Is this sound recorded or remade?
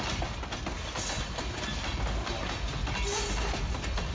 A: recorded